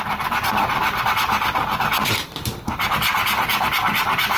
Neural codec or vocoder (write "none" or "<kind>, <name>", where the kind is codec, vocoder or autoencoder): vocoder, BigVGAN v2